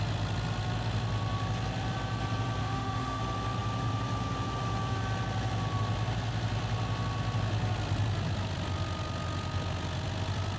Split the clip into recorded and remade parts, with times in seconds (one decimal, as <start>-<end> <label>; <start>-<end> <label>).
0.0-2.6 recorded; 2.6-3.2 remade; 3.2-10.6 recorded